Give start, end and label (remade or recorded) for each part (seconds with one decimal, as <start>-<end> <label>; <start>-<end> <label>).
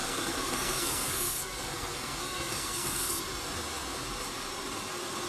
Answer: 0.0-3.2 remade; 3.2-5.3 recorded